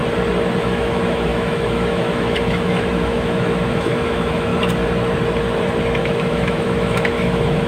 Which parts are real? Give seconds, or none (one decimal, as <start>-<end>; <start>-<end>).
0.0-0.6; 4.5-6.0